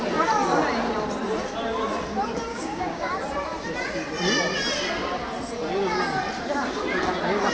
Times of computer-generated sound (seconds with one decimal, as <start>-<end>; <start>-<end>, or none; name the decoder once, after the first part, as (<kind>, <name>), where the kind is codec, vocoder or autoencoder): 2.5-3.1 (codec, DAC)